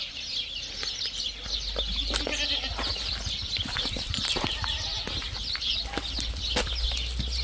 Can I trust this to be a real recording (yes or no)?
yes